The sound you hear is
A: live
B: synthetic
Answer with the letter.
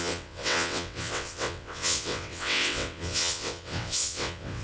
B